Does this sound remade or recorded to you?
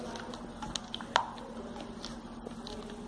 recorded